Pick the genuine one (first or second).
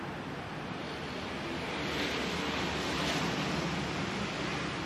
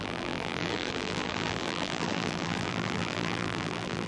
first